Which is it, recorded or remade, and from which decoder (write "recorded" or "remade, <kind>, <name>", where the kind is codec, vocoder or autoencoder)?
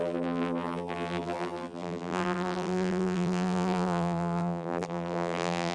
remade, vocoder, BigVGAN v2